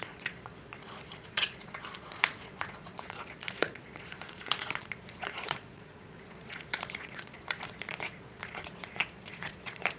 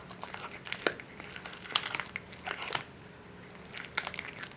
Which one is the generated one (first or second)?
first